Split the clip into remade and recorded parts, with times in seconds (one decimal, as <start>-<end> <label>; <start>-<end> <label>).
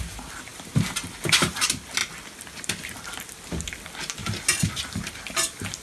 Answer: 0.0-0.5 recorded; 0.5-1.6 remade; 1.6-5.8 recorded